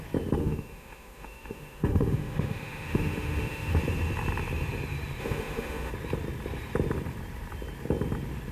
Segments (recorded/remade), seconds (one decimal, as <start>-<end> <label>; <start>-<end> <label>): 0.0-0.4 recorded; 0.4-3.8 remade; 3.8-5.2 recorded; 5.2-5.9 remade; 5.9-8.5 recorded